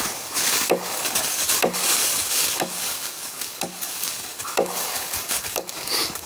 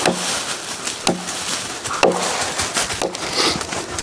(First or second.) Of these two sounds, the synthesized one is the first